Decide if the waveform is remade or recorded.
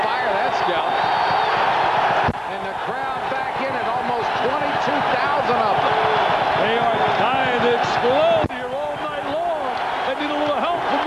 recorded